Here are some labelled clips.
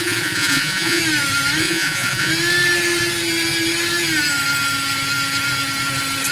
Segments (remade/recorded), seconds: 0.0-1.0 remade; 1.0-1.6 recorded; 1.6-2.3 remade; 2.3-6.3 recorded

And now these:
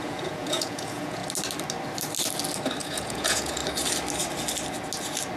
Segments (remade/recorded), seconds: 0.0-1.2 remade; 1.2-2.8 recorded; 2.8-3.6 remade; 3.6-5.4 recorded

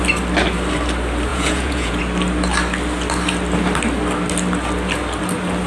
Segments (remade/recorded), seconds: 0.0-1.3 recorded; 1.3-2.0 remade; 2.0-5.7 recorded

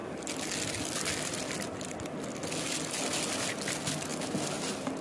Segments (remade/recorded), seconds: 0.0-5.0 recorded